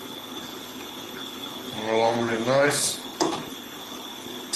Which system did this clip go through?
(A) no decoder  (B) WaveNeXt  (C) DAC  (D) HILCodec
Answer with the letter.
D